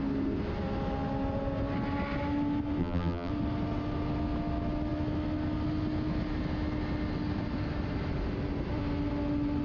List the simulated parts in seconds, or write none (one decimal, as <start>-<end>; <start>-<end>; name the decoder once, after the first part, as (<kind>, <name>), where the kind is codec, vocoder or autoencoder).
2.8-3.3 (vocoder, BigVGAN v2)